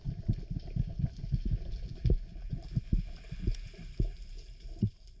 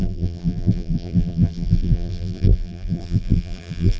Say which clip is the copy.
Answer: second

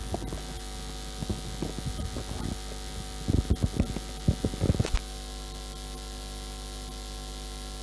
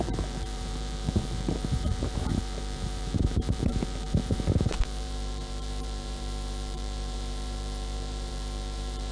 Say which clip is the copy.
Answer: second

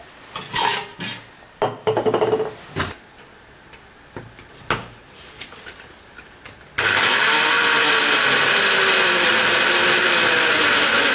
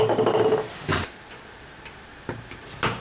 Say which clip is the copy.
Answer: second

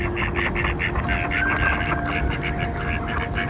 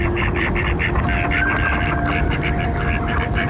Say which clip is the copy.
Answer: second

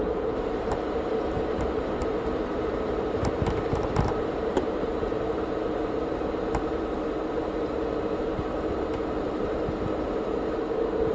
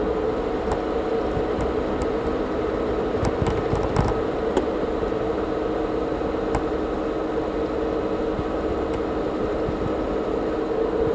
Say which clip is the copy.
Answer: first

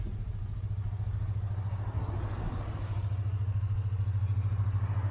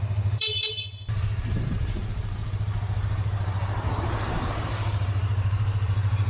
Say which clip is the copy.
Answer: second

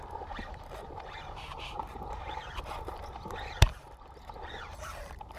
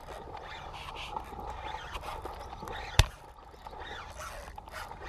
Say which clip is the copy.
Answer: first